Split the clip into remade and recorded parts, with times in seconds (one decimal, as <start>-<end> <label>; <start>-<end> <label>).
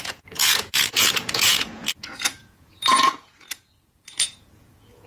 0.0-5.1 remade